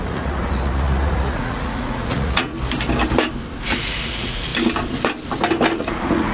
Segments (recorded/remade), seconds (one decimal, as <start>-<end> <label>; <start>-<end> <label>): 0.0-2.5 remade; 2.5-3.6 recorded; 3.6-4.5 remade; 4.5-5.8 recorded; 5.8-6.3 remade